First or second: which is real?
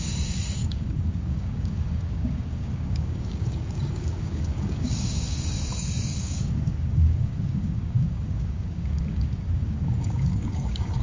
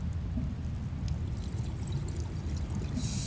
second